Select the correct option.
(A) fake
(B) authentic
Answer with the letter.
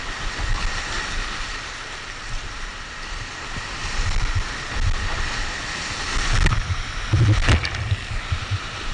B